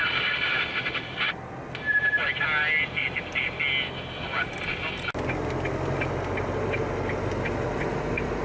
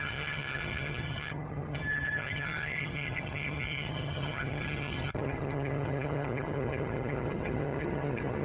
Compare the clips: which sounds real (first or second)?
first